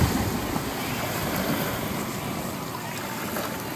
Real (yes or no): yes